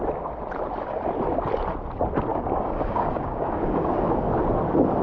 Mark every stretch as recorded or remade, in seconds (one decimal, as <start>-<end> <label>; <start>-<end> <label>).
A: 0.0-2.3 recorded; 2.3-4.3 remade; 4.3-5.0 recorded

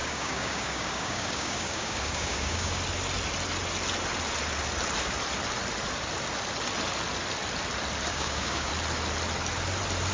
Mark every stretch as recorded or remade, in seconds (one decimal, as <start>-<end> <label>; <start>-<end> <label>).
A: 0.0-2.8 remade; 2.8-8.1 recorded; 8.1-8.7 remade; 8.7-10.1 recorded

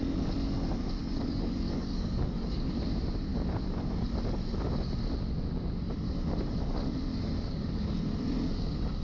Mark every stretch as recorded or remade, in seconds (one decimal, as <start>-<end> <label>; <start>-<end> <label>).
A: 0.0-1.0 recorded; 1.0-2.7 remade; 2.7-9.0 recorded

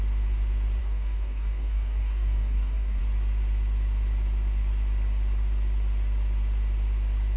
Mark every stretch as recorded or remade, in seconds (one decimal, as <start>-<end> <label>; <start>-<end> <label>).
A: 0.0-0.8 recorded; 0.8-3.0 remade; 3.0-7.4 recorded

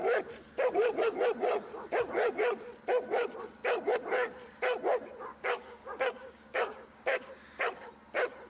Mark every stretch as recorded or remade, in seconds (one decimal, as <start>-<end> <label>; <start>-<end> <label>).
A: 0.0-5.3 recorded; 5.3-7.3 remade; 7.3-8.5 recorded

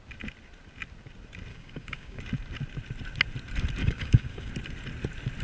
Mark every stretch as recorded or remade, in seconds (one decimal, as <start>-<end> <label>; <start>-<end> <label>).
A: 0.0-1.5 recorded; 1.5-2.2 remade; 2.2-3.8 recorded; 3.8-4.5 remade; 4.5-5.4 recorded